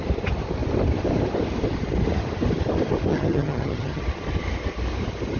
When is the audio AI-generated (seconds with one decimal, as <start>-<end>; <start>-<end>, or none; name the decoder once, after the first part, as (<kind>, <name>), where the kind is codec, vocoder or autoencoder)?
3.1-4.0 (vocoder, HiFi-GAN)